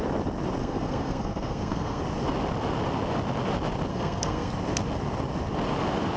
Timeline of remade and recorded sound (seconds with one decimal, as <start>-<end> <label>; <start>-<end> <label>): 0.0-0.6 recorded; 0.6-2.0 remade; 2.0-3.9 recorded; 3.9-4.5 remade; 4.5-6.2 recorded